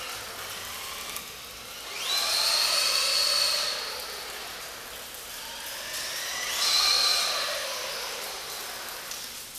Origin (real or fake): real